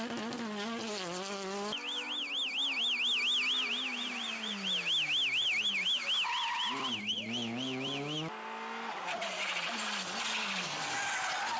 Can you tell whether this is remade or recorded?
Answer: recorded